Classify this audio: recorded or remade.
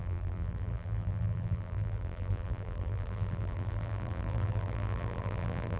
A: remade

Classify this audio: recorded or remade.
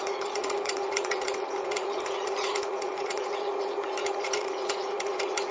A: remade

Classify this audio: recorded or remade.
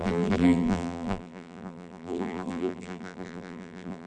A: remade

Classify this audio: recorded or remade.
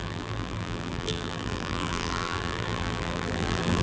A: remade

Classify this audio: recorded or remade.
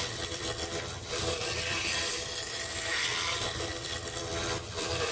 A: remade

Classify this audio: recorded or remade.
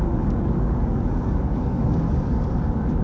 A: remade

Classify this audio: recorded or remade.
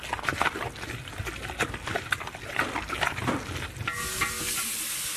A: recorded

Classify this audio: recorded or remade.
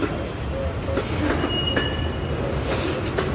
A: recorded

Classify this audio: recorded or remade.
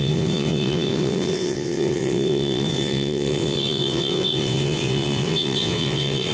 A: remade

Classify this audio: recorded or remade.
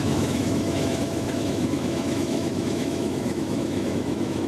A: remade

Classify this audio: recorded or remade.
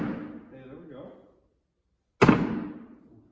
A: recorded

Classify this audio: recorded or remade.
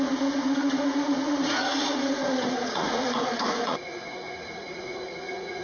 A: remade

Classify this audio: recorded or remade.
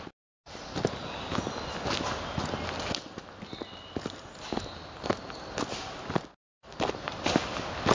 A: recorded